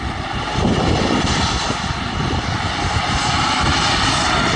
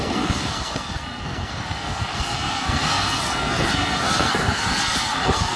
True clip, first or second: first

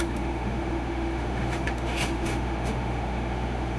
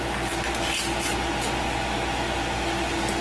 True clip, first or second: second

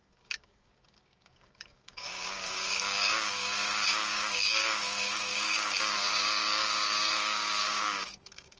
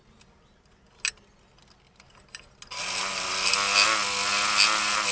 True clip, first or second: second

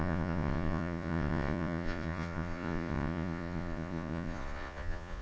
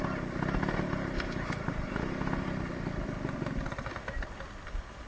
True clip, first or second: second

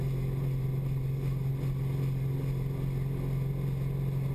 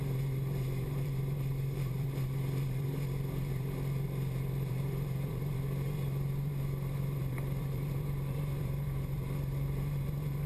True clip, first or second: first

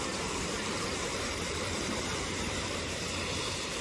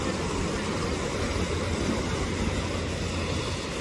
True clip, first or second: second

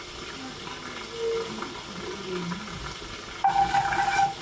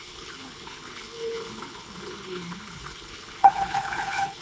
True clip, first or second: first